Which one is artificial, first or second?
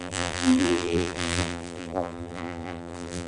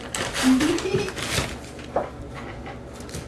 first